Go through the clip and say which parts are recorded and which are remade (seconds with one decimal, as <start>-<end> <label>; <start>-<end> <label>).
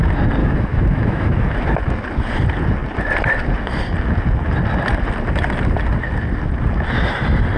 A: 0.0-0.4 recorded; 0.4-1.5 remade; 1.5-7.6 recorded